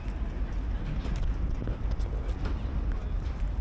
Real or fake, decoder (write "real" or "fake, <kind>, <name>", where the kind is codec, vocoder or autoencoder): real